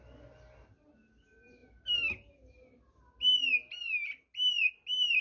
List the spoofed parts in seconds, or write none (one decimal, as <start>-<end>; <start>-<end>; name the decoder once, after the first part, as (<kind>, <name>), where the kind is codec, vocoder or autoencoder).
none